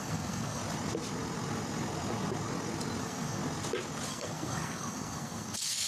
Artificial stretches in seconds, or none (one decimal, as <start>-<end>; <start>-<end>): 0.0-0.6; 3.0-3.4; 4.1-5.9